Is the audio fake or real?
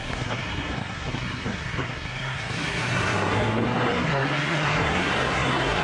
fake